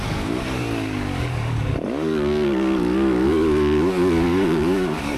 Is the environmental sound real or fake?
fake